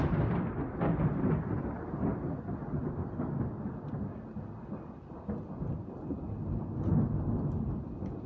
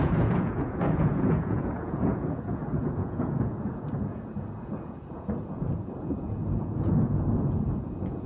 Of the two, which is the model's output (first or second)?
second